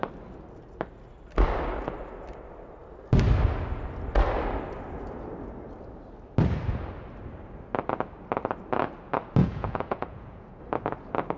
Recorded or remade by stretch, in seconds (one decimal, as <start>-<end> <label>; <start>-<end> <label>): 0.0-9.4 recorded; 9.4-10.6 remade; 10.6-11.4 recorded